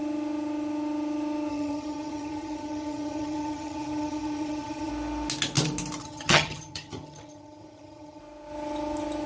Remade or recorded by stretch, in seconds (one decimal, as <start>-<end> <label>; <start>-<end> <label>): 0.0-1.5 recorded; 1.5-4.9 remade; 4.9-6.0 recorded; 6.0-8.2 remade; 8.2-9.3 recorded